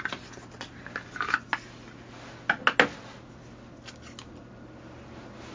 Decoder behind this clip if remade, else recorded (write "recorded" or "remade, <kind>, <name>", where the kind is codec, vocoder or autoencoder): recorded